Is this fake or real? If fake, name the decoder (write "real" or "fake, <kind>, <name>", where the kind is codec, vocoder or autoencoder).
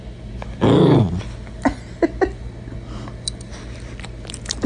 real